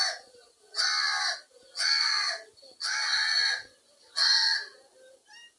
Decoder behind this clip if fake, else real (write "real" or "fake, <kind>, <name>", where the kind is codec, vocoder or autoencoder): real